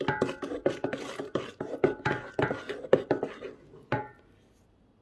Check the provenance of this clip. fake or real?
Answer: real